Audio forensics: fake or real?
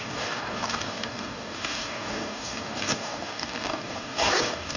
fake